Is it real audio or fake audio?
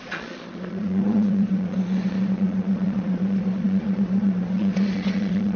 fake